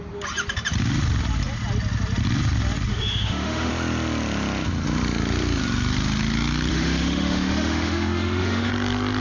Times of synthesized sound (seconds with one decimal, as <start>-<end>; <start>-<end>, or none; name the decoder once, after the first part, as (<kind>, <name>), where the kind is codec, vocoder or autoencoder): 2.9-3.7 (autoencoder, DAC-VAE); 6.7-8.7